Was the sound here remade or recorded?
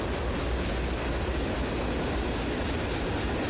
recorded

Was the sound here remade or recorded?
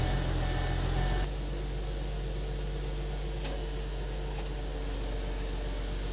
recorded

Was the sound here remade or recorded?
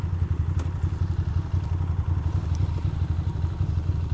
recorded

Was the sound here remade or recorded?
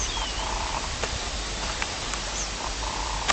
remade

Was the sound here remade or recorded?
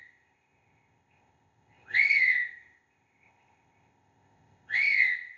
remade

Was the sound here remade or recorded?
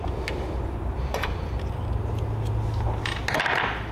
recorded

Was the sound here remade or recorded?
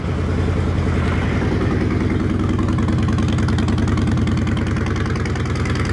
recorded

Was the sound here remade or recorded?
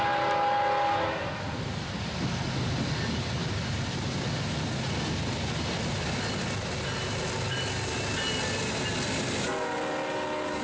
recorded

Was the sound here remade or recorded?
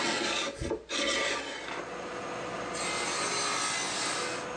recorded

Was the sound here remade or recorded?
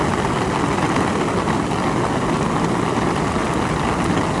recorded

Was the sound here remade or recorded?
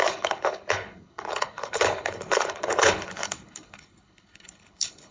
remade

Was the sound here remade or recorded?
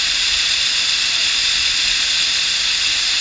recorded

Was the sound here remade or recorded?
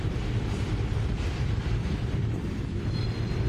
remade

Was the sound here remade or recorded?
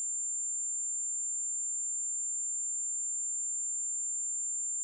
recorded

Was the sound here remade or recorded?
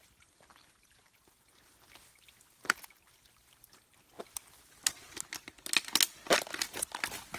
recorded